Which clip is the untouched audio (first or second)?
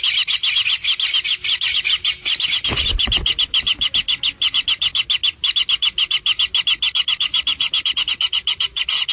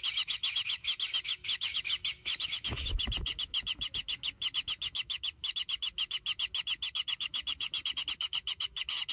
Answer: first